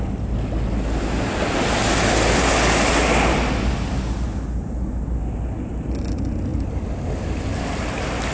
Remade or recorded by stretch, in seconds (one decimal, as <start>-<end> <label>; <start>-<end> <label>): 0.0-8.3 recorded